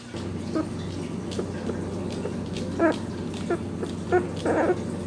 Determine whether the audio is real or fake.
real